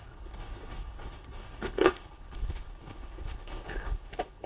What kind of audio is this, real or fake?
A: fake